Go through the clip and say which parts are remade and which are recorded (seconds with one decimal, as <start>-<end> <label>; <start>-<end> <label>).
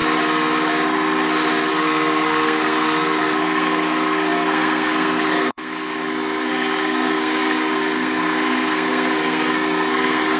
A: 0.0-1.7 recorded; 1.7-10.4 remade